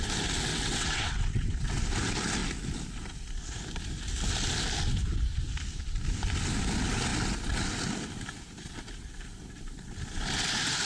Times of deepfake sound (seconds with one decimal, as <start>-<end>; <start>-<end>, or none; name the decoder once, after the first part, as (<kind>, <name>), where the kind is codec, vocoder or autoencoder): 0.5-1.8 (vocoder, WaveNeXt)